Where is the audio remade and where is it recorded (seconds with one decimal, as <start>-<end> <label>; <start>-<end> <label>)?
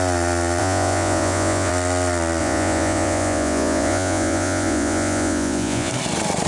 0.0-0.6 recorded; 0.6-1.7 remade; 1.7-2.4 recorded; 2.4-5.9 remade; 5.9-6.5 recorded